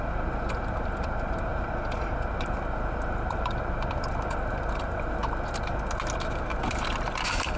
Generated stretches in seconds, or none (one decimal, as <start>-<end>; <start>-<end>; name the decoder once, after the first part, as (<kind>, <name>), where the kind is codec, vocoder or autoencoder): 0.0-1.5 (vocoder, BigVGAN v2); 2.4-5.2; 6.6-7.6

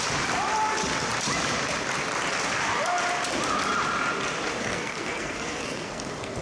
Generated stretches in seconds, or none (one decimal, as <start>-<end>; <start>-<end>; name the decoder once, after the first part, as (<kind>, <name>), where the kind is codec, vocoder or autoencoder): 4.6-6.4 (codec, SNAC)

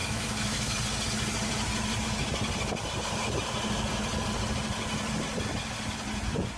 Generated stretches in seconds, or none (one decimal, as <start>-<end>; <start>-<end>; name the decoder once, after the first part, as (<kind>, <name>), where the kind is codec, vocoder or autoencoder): 0.0-0.8 (autoencoder, DAC-VAE)

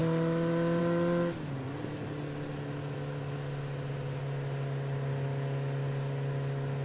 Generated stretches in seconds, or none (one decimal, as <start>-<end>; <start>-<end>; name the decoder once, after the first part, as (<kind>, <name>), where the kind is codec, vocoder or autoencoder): none

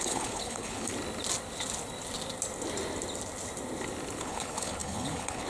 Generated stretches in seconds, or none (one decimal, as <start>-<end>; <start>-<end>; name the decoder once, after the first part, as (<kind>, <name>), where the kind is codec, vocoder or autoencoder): 0.0-0.9 (codec, HILCodec); 4.2-5.5